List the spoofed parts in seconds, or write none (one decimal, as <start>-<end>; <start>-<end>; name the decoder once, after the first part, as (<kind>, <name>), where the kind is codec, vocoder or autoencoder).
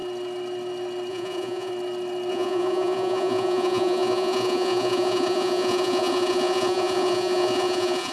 1.1-1.7 (vocoder, Vocos); 2.3-8.1